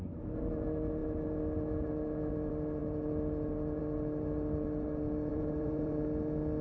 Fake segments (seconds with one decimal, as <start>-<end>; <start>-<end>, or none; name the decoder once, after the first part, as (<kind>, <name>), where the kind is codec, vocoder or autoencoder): 5.3-6.0 (vocoder, BigVGAN v2)